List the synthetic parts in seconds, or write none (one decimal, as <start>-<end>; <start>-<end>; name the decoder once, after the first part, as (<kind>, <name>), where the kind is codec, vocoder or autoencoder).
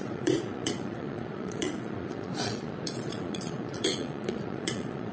0.0-5.1 (vocoder, Vocos)